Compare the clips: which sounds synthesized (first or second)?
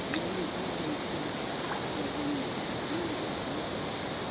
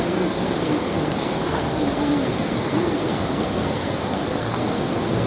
second